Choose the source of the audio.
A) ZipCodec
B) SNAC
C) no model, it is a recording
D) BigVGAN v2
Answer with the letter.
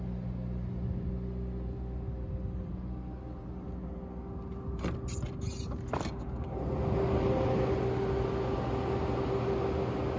C